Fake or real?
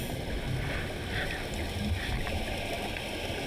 real